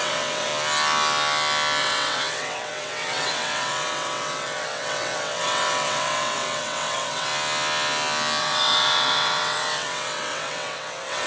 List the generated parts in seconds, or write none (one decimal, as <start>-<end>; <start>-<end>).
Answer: 0.0-0.5; 1.8-7.3; 8.4-11.3